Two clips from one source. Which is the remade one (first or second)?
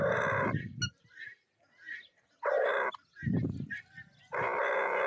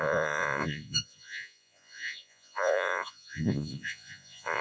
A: second